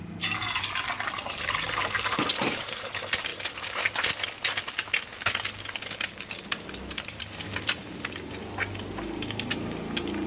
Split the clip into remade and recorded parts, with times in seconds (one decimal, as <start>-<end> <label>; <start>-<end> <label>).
0.0-10.3 recorded